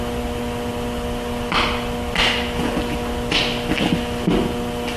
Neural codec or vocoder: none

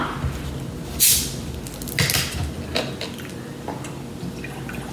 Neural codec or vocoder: none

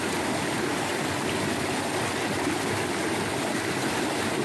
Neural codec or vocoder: none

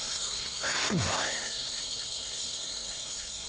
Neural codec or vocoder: codec, SNAC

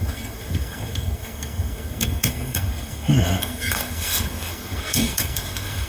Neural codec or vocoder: codec, SNAC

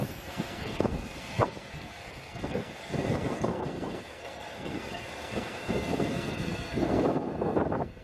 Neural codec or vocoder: codec, SNAC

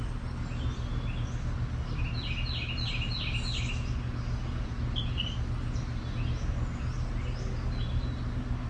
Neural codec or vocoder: none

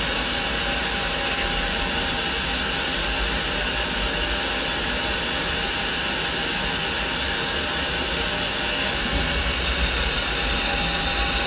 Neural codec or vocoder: none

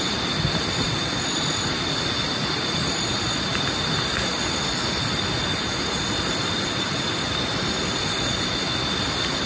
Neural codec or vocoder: none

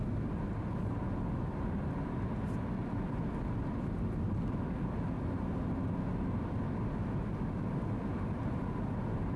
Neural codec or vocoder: none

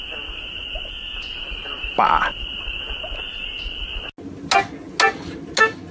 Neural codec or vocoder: none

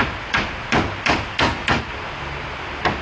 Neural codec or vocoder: none